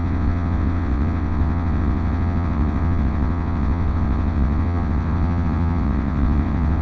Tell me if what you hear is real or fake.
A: fake